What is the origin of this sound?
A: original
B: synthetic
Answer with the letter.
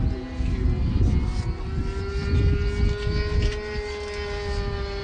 A